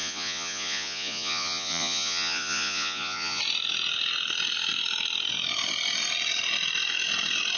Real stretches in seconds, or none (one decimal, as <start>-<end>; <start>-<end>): 3.4-7.6